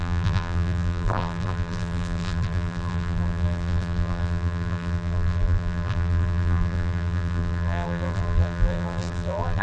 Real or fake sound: fake